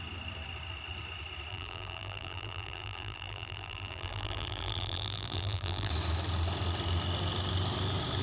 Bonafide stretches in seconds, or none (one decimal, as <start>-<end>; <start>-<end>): 0.0-1.5; 5.9-8.2